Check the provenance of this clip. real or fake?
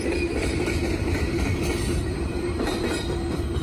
fake